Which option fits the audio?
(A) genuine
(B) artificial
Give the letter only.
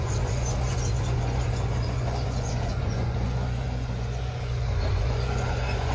B